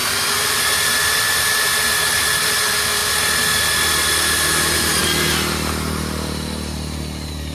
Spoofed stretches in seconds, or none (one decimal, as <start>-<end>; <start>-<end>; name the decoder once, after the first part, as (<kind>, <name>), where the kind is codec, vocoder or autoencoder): 0.0-1.7 (vocoder, BigVGAN v2)